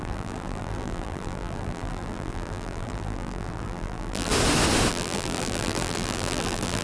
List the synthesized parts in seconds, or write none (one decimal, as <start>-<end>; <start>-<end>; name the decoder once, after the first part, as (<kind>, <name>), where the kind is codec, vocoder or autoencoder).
0.0-4.3 (vocoder, BigVGAN v2); 4.9-6.8